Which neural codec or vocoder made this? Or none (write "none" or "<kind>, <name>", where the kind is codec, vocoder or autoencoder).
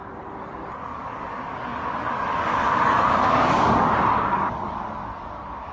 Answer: codec, DAC